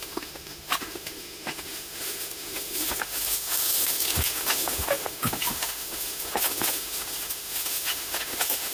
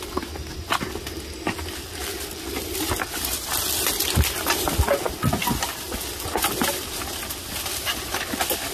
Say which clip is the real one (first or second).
second